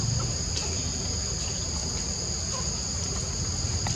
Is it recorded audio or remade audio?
recorded